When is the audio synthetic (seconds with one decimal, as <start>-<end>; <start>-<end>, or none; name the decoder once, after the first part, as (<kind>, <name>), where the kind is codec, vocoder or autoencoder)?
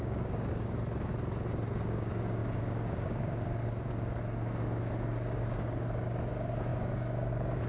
0.0-1.1 (codec, DAC); 1.7-7.7